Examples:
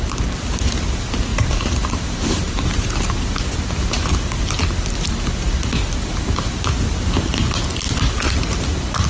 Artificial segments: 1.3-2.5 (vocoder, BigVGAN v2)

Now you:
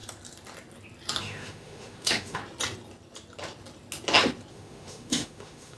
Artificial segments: 1.2-2.4 (autoencoder, DAC-VAE); 4.5-5.8

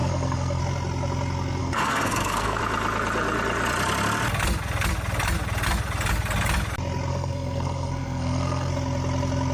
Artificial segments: 0.0-0.6 (codec, SNAC); 1.6-2.6; 7.1-8.7

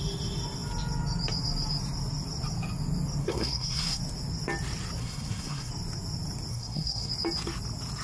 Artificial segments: 3.2-4.0 (codec, SNAC); 5.0-5.7; 6.5-7.1

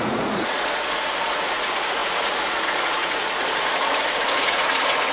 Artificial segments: 0.0-5.1 (vocoder, Vocos)

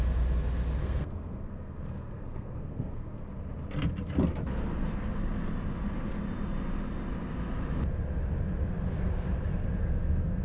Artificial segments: 0.8-3.2 (codec, SNAC)